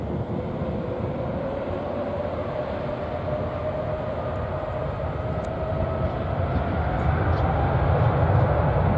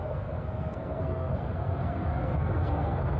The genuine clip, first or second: first